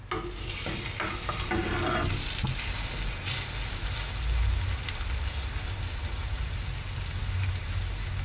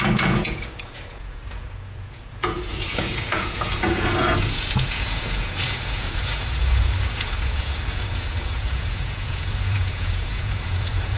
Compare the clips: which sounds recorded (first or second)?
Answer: first